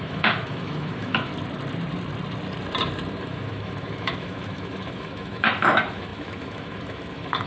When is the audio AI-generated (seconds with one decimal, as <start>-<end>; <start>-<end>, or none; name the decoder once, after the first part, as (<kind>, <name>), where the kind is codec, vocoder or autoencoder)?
0.0-1.3 (autoencoder, DAC-VAE); 3.2-7.5